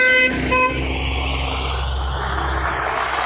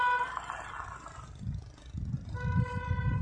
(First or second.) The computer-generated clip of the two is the first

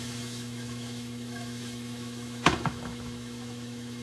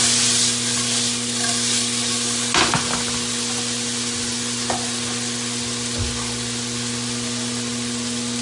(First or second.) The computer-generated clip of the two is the first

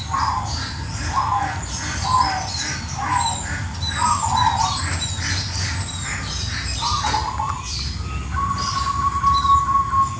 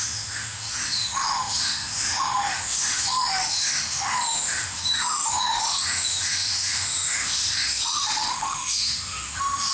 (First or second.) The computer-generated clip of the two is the second